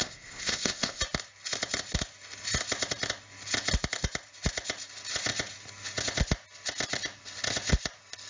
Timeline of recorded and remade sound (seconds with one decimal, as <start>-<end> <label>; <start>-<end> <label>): 0.0-1.0 remade; 1.0-8.3 recorded

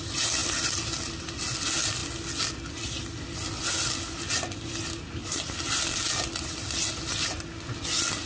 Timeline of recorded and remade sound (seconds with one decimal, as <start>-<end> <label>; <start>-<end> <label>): 0.0-8.3 recorded